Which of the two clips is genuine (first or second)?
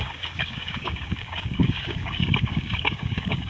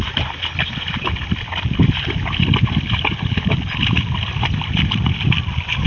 second